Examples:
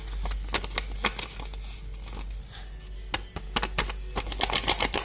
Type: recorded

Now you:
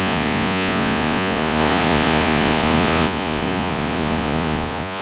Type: remade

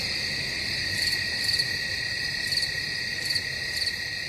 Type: recorded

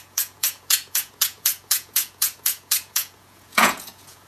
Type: remade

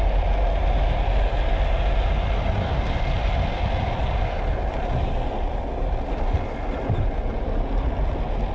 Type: recorded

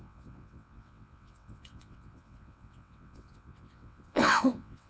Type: remade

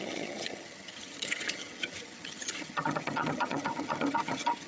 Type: remade